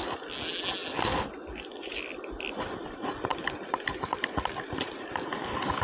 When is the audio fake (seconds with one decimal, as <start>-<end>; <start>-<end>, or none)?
3.3-5.1

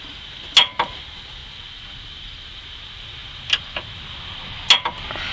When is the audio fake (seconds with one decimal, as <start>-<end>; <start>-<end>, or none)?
none